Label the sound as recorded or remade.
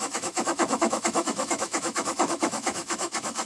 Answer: remade